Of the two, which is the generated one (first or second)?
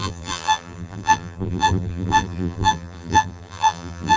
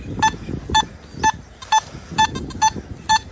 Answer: first